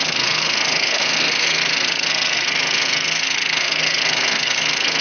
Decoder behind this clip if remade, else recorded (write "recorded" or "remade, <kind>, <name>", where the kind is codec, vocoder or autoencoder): remade, codec, SNAC